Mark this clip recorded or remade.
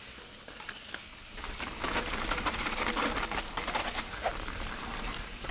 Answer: recorded